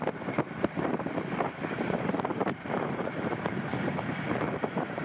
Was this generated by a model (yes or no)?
yes